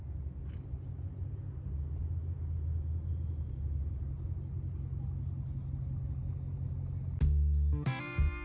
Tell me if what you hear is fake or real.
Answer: real